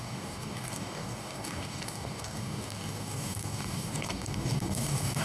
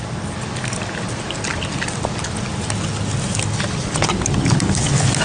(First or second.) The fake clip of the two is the first